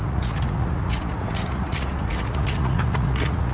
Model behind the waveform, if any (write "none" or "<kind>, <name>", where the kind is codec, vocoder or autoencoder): vocoder, Vocos